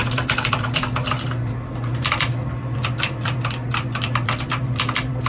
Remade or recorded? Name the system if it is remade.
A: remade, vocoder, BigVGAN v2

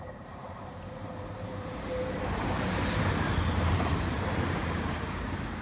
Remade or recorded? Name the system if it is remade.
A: remade, vocoder, BigVGAN v2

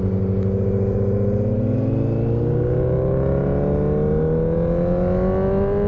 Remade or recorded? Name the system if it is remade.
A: recorded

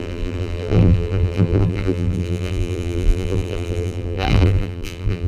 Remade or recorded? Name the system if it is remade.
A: remade, vocoder, BigVGAN v2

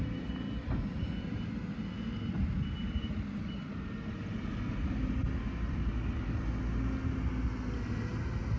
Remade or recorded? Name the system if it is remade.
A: recorded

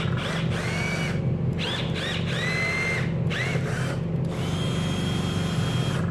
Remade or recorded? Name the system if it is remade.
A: recorded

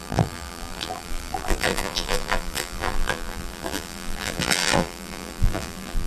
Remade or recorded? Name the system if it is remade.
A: remade, vocoder, BigVGAN v2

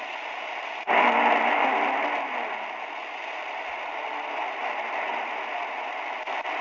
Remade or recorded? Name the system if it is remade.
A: recorded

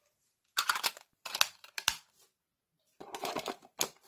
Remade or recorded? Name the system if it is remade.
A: remade, vocoder, BigVGAN v2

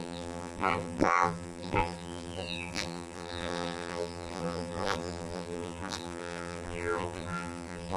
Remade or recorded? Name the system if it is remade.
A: remade, vocoder, BigVGAN v2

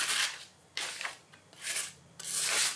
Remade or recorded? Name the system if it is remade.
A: remade, vocoder, BigVGAN v2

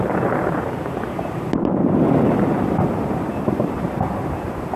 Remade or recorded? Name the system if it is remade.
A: remade, vocoder, BigVGAN v2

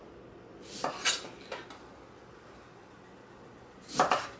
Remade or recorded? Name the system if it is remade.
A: recorded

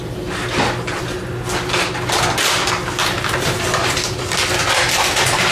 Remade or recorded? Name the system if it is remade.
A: recorded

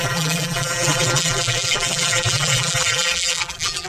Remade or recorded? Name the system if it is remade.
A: remade, vocoder, BigVGAN v2